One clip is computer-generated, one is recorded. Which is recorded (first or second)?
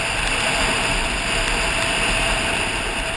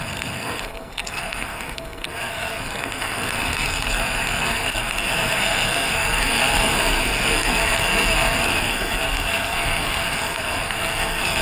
first